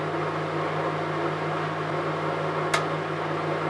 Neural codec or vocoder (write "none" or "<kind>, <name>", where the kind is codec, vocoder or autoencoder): none